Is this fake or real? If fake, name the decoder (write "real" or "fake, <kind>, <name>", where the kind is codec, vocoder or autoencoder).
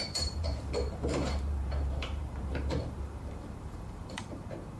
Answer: fake, vocoder, BigVGAN v2